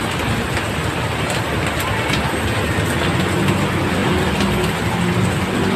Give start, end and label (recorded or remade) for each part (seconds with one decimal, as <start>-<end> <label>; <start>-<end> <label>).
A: 0.0-5.8 recorded